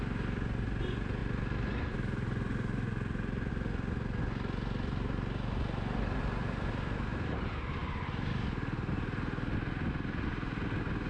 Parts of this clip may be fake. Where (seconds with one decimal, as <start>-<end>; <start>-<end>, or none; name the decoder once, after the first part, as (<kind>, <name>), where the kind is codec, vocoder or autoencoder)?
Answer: none